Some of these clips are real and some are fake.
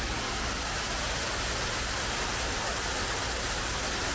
real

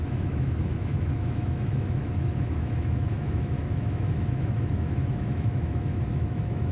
fake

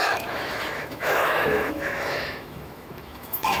fake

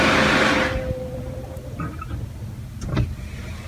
real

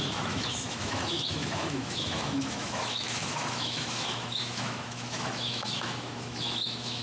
fake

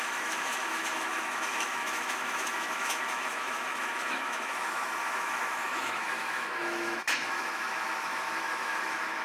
fake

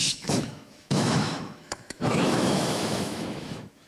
fake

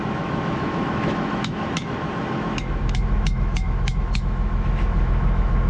fake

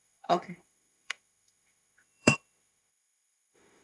fake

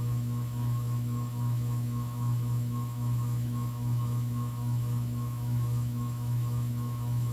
fake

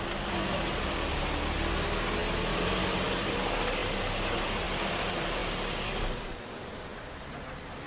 real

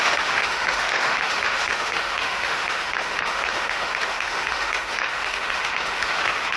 fake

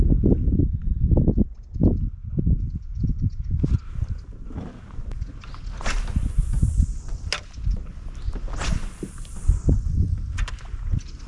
real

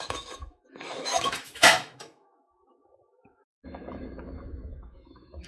fake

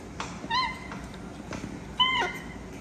real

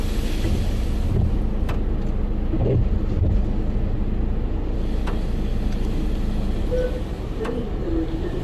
real